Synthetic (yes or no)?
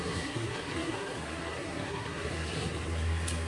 yes